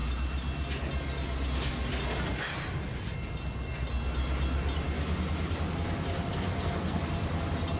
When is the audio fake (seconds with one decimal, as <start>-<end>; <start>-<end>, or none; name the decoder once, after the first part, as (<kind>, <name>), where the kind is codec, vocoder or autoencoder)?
6.3-7.0 (codec, SNAC)